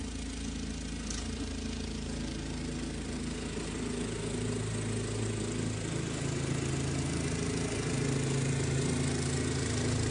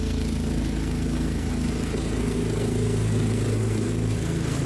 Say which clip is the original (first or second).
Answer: first